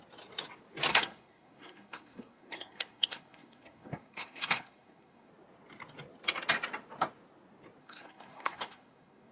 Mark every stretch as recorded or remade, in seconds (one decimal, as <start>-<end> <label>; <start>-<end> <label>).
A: 0.0-0.9 recorded; 0.9-5.3 remade; 5.3-7.8 recorded; 7.8-9.3 remade